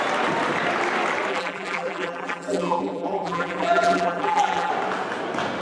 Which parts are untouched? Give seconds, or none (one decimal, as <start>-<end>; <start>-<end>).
0.0-1.3; 4.7-5.6